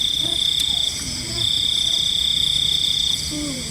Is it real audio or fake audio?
fake